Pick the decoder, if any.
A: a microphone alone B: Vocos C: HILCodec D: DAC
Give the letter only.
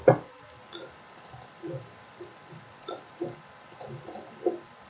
A